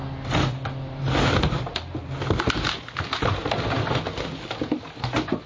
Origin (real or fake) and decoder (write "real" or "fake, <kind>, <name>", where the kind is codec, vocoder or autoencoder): real